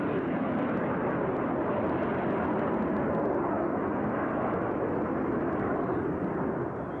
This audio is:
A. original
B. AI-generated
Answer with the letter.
A